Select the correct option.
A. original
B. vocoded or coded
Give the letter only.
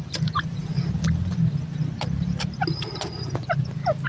A